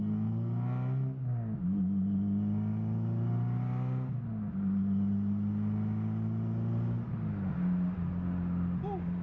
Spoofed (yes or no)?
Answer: no